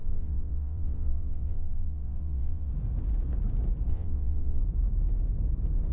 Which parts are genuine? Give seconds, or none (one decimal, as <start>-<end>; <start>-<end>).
2.7-3.9; 4.6-5.9